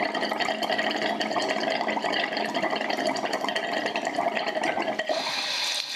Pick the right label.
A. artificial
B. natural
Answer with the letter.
B